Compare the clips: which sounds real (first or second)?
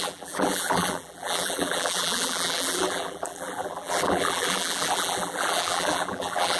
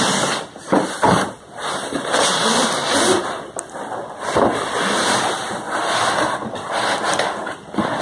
second